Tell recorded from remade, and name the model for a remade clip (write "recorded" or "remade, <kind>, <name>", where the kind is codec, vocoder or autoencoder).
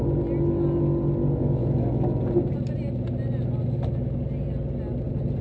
recorded